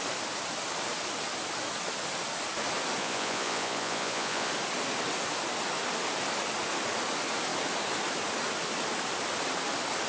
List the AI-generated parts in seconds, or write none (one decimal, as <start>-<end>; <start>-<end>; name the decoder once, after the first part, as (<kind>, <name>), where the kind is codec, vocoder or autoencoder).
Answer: 3.0-4.5 (vocoder, Vocos)